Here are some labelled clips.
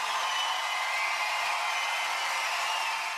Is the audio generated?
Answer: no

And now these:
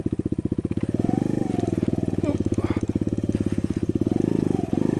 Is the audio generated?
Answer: no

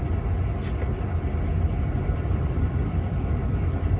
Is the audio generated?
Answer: no